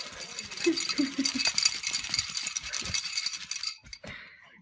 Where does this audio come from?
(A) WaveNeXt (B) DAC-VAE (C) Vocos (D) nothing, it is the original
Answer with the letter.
D